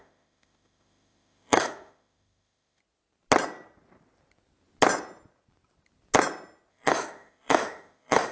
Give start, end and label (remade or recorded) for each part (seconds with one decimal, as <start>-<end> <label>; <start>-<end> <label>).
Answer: 0.0-2.8 remade; 2.8-6.7 recorded; 6.7-8.3 remade